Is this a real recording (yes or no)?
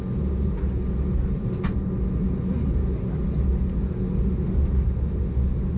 yes